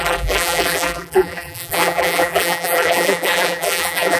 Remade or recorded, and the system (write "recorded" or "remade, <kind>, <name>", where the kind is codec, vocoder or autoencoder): remade, vocoder, BigVGAN v2